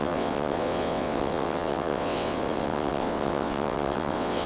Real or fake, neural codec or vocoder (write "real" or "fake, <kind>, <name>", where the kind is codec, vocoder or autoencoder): fake, vocoder, WaveNeXt